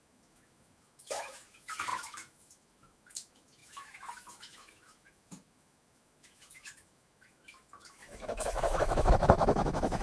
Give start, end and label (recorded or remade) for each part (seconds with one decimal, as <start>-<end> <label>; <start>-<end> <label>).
0.0-10.0 remade